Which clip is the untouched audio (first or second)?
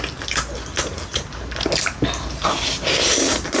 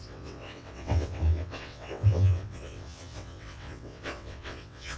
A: first